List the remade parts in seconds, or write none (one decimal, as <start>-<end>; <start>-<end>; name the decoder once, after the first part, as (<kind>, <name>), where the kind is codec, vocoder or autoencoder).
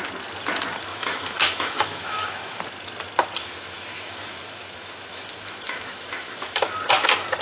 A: 0.9-2.6 (autoencoder, DAC-VAE); 3.4-6.7